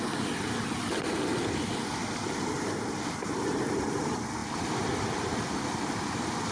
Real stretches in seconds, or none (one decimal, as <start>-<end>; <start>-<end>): 0.0-6.5